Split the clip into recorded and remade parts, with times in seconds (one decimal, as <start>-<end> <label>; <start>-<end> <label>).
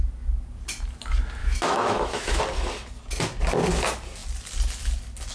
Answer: 0.0-1.4 recorded; 1.4-2.4 remade; 2.4-5.3 recorded